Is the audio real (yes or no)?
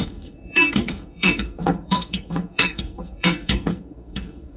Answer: no